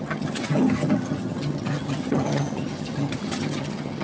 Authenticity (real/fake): fake